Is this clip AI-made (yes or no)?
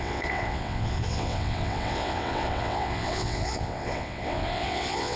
yes